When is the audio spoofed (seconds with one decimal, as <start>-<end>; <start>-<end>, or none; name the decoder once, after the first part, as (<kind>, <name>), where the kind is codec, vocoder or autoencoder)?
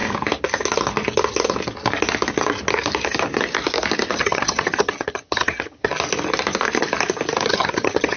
4.2-5.9 (vocoder, HiFi-GAN); 7.5-8.2